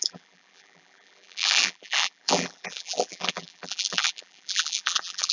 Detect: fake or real fake